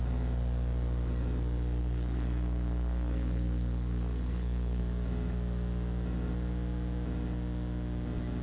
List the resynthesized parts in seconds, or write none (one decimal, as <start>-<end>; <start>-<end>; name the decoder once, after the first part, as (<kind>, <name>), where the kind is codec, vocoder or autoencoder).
1.8-4.8 (codec, SNAC)